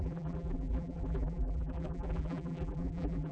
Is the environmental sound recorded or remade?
remade